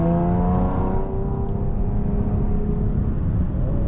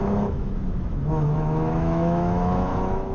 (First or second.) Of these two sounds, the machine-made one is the second